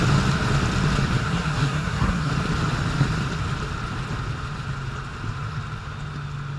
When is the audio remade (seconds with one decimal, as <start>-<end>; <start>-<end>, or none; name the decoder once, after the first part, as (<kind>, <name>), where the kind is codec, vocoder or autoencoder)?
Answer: 1.2-2.3 (codec, SNAC)